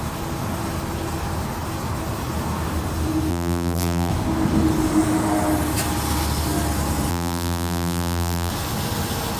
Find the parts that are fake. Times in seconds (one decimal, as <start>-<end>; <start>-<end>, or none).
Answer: 3.3-4.1; 7.1-8.5